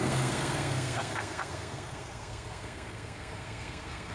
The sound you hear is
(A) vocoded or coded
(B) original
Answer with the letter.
A